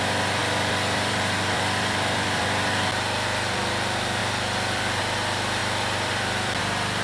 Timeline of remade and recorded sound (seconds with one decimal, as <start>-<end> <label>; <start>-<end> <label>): 0.0-0.4 recorded; 0.4-3.7 remade; 3.7-4.2 recorded; 4.2-5.0 remade; 5.0-5.6 recorded; 5.6-6.6 remade; 6.6-7.0 recorded